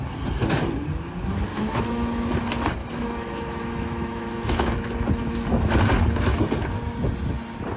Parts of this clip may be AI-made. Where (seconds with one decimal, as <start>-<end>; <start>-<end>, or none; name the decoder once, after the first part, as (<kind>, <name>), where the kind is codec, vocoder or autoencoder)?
1.5-2.3 (autoencoder, DAC-VAE); 2.8-5.7

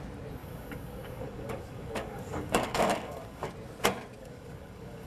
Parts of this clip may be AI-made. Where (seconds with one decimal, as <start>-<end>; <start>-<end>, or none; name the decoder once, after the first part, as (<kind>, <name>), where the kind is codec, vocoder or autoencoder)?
0.4-3.5 (codec, DAC); 4.2-5.1